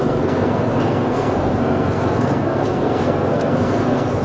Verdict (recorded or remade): remade